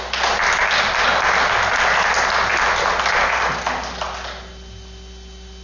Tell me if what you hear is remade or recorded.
recorded